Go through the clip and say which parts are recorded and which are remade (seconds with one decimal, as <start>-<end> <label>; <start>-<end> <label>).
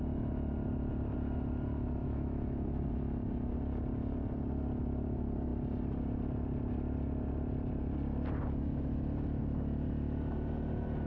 0.0-2.0 recorded; 2.0-2.8 remade; 2.8-11.1 recorded